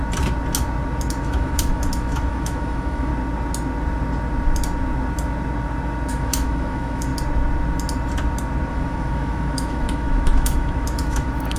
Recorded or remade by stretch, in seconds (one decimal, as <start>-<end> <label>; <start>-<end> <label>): 0.0-1.2 recorded; 1.2-3.1 remade; 3.1-6.1 recorded; 6.1-7.1 remade; 7.1-8.7 recorded; 8.7-11.6 remade